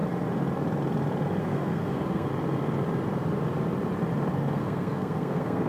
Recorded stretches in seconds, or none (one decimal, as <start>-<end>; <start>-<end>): 0.0-1.4; 2.3-4.3